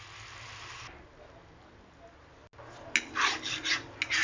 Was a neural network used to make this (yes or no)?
no